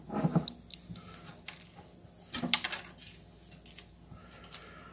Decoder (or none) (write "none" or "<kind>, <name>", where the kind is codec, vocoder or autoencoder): none